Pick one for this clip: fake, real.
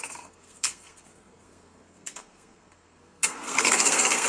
fake